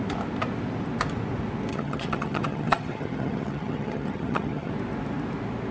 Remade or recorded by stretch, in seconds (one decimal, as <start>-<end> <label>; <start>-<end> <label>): 0.0-1.7 recorded; 1.7-4.7 remade; 4.7-5.7 recorded